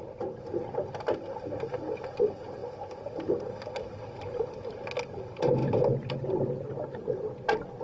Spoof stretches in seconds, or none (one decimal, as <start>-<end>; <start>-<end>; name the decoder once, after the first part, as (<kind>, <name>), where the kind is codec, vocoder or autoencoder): none